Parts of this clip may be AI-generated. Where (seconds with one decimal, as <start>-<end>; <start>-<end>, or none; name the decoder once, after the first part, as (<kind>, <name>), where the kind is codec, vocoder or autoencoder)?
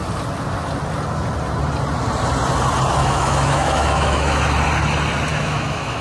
3.0-4.4 (autoencoder, DAC-VAE); 5.3-6.0